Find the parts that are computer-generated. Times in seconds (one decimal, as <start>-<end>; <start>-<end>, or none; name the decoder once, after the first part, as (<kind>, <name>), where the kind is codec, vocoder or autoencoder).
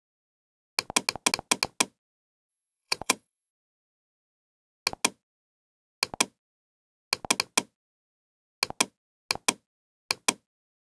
2.5-3.5 (vocoder, WaveNeXt)